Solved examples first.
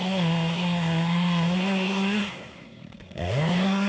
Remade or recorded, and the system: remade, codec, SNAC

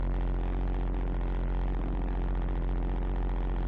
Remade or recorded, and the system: recorded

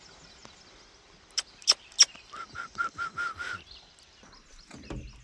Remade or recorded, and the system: recorded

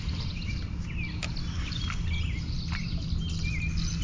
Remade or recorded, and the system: recorded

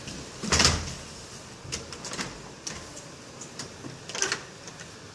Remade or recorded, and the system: recorded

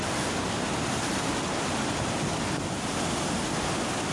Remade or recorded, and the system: recorded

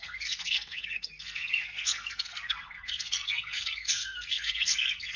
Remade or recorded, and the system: remade, codec, SNAC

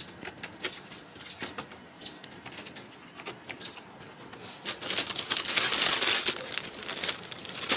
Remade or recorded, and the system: recorded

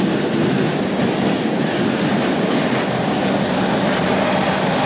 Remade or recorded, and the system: recorded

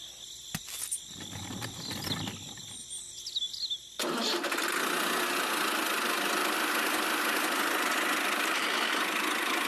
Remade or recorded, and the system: recorded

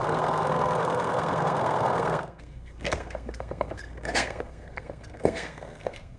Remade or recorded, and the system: remade, codec, SNAC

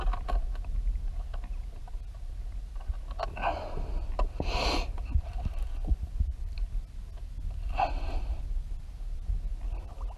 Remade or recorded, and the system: recorded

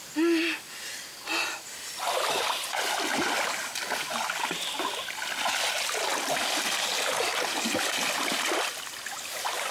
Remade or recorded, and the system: recorded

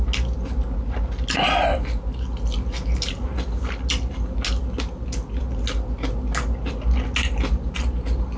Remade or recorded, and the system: recorded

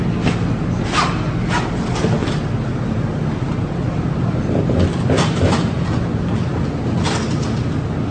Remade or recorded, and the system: recorded